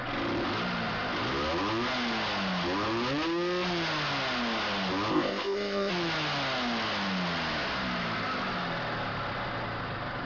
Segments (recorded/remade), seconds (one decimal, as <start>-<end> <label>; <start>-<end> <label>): 0.0-5.1 recorded; 5.1-5.9 remade; 5.9-10.3 recorded